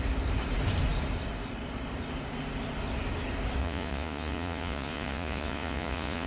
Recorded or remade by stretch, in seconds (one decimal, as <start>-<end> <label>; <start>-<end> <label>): 0.0-3.6 recorded; 3.6-6.3 remade